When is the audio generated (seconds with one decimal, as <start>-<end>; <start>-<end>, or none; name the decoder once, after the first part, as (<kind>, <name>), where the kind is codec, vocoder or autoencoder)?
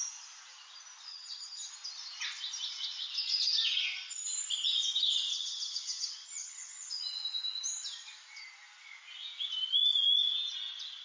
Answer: 1.1-1.7 (vocoder, HiFi-GAN); 5.3-7.0